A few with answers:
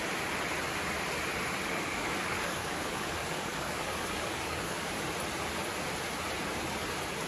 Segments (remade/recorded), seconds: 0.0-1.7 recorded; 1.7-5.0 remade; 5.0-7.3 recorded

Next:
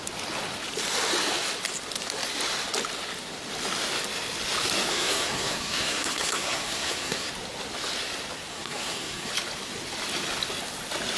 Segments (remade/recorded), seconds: 0.0-4.9 recorded; 4.9-7.3 remade; 7.3-8.5 recorded; 8.5-9.3 remade; 9.3-11.2 recorded